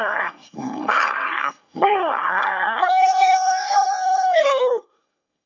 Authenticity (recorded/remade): remade